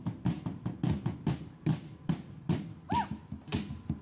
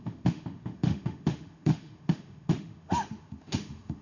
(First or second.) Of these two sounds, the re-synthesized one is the second